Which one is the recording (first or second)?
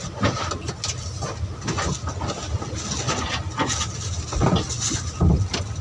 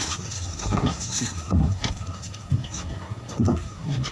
first